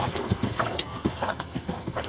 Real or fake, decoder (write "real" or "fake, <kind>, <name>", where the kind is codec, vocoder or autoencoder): fake, codec, SNAC